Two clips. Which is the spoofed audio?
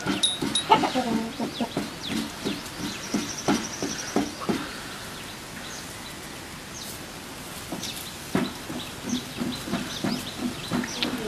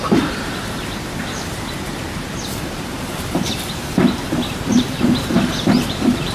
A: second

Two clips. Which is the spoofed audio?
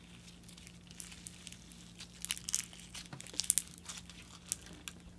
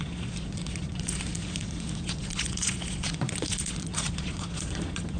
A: second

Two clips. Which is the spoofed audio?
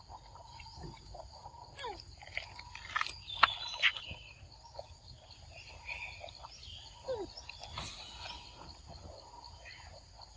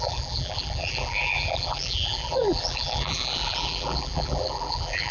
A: second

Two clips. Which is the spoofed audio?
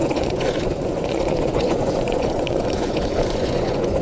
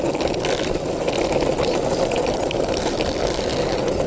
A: first